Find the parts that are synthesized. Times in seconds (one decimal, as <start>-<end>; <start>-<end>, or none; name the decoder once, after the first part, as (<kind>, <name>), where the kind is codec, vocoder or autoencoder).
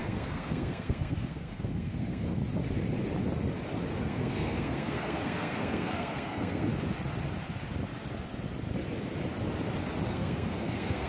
0.0-2.4 (codec, SNAC); 4.0-6.7; 10.1-11.1